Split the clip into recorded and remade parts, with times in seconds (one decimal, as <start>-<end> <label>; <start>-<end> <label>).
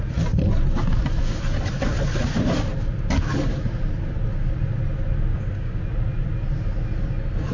0.0-5.3 recorded; 5.3-5.8 remade; 5.8-7.5 recorded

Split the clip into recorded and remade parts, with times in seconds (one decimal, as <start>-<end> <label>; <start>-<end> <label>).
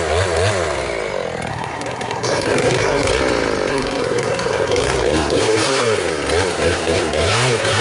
0.0-1.5 recorded; 1.5-3.1 remade; 3.1-3.7 recorded; 3.7-6.1 remade; 6.1-6.5 recorded; 6.5-7.8 remade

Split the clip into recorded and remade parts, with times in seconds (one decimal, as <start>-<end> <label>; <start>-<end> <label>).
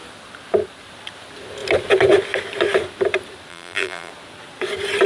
0.0-3.5 recorded; 3.5-4.1 remade; 4.1-5.1 recorded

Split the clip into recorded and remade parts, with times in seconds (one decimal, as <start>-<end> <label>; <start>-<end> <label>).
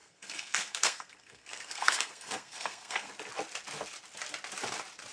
0.0-3.1 remade; 3.1-5.1 recorded